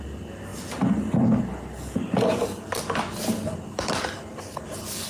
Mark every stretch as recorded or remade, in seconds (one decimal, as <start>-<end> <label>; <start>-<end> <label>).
0.0-5.1 recorded